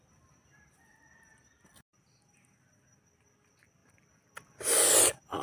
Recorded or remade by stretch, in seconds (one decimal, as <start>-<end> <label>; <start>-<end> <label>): 0.0-3.8 remade; 3.8-5.0 recorded; 5.0-5.4 remade